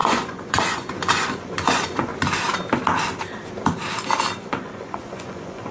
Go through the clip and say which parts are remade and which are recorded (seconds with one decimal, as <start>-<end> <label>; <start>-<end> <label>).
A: 0.0-2.1 remade; 2.1-4.4 recorded; 4.4-5.7 remade